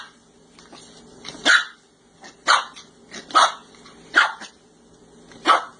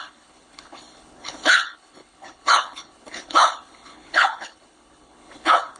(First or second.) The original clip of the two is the first